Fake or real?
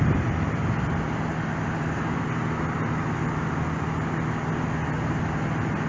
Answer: real